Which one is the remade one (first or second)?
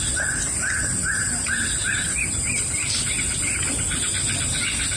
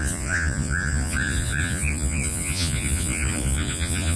second